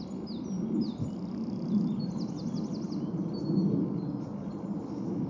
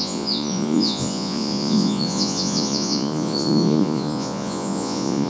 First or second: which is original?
first